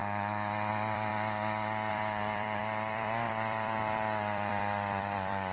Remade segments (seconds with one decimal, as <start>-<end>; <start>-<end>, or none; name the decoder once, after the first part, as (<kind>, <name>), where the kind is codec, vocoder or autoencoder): 0.7-1.1 (vocoder, BigVGAN v2); 1.9-5.5